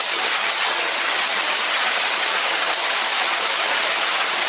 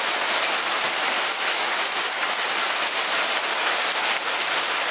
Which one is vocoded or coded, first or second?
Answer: first